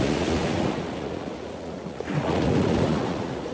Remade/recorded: remade